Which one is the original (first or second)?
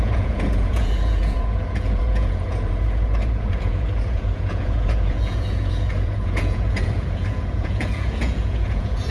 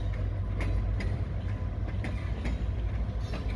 second